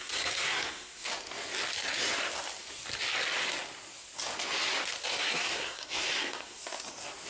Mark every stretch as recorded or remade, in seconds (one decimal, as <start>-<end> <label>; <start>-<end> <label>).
0.0-1.1 remade; 1.1-5.2 recorded; 5.2-6.6 remade; 6.6-7.3 recorded